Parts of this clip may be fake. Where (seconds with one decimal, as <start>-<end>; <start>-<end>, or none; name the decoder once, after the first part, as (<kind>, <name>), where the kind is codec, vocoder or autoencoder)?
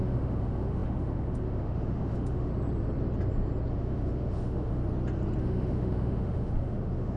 0.0-2.5 (autoencoder, DAC-VAE); 3.7-4.8; 5.4-7.2